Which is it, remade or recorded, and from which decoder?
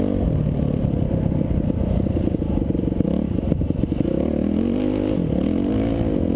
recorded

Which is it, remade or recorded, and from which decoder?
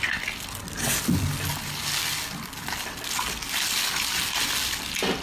recorded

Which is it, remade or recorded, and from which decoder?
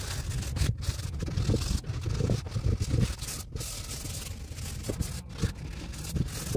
recorded